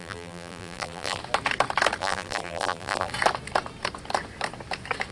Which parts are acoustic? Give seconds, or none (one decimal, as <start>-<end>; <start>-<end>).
1.2-2.0; 3.1-5.1